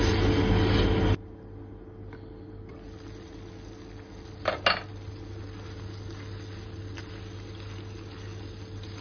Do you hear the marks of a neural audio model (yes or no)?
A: no